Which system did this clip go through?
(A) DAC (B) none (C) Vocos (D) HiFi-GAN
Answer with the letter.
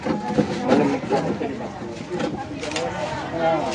B